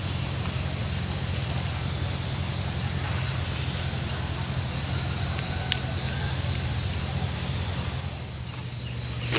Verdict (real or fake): real